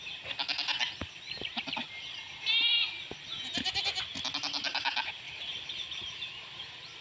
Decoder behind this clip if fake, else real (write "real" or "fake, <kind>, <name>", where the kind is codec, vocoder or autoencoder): real